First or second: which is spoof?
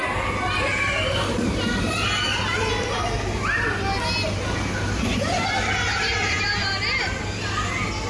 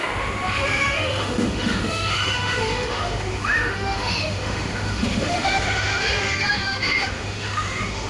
second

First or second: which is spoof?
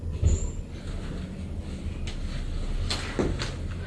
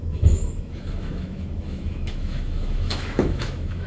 second